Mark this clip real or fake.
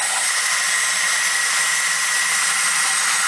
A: real